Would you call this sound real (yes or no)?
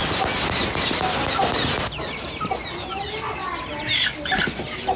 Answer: yes